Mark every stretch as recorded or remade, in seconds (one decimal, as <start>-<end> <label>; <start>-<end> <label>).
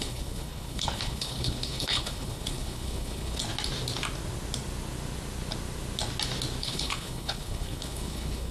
0.0-3.4 remade; 3.4-6.6 recorded; 6.6-8.5 remade